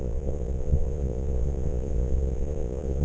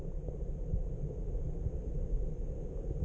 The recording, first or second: second